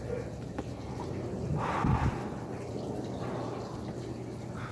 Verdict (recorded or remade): recorded